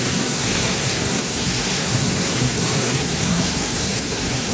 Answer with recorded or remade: remade